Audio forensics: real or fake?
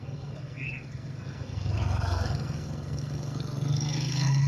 fake